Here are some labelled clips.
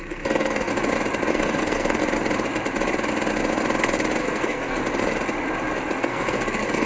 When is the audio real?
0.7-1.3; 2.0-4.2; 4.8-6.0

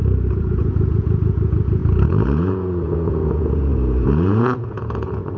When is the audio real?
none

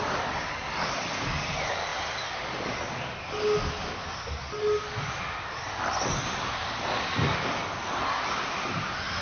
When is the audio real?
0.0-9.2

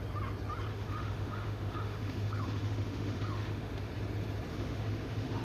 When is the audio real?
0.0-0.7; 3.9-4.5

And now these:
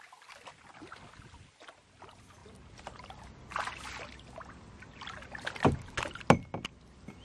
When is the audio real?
0.0-7.2

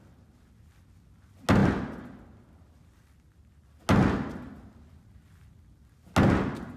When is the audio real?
0.0-6.8

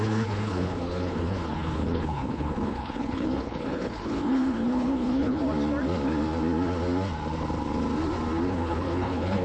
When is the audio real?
5.4-8.5